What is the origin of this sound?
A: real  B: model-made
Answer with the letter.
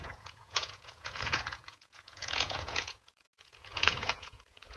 B